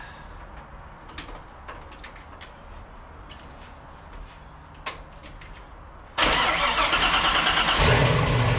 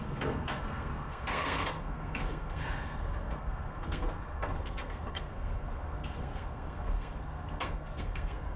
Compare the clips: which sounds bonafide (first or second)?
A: first